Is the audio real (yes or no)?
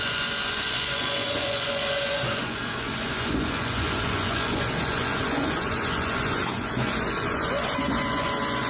no